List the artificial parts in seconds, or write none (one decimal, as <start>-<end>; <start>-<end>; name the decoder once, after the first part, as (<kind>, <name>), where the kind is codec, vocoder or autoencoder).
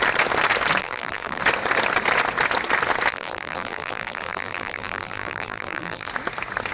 0.8-1.4 (vocoder, BigVGAN v2); 3.1-6.1